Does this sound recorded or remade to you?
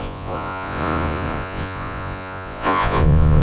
remade